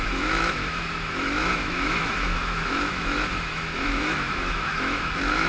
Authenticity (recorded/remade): remade